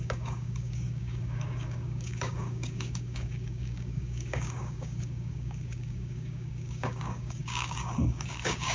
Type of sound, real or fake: fake